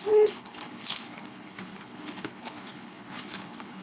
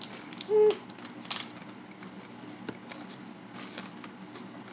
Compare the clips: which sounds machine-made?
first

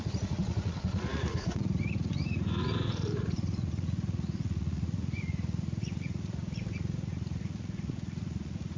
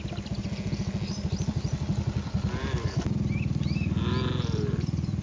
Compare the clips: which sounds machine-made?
first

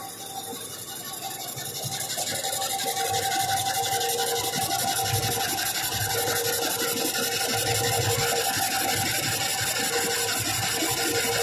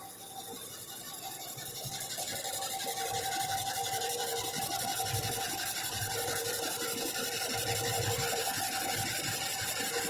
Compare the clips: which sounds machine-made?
second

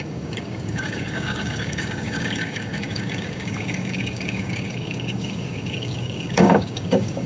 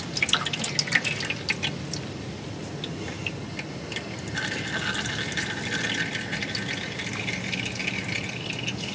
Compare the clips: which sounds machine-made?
first